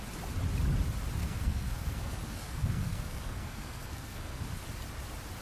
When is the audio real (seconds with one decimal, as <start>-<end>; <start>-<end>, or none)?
0.0-1.2; 4.4-5.4